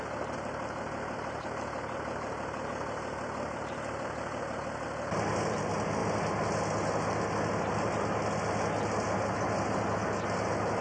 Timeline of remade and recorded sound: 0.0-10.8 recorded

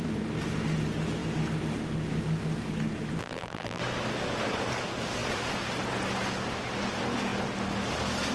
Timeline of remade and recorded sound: 0.0-3.2 recorded; 3.2-3.8 remade; 3.8-8.3 recorded

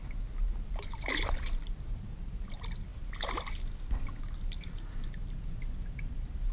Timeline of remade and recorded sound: 0.0-2.9 recorded; 2.9-3.6 remade; 3.6-6.5 recorded

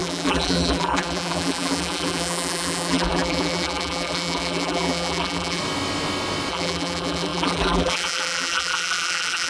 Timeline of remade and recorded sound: 0.0-5.6 remade; 5.6-6.5 recorded; 6.5-9.5 remade

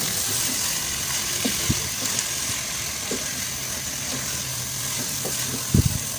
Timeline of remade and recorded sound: 0.0-6.2 recorded